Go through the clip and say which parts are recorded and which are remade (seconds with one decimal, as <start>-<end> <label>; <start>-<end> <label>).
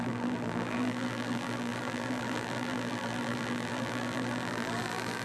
0.0-5.2 remade